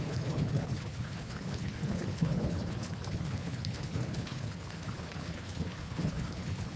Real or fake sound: fake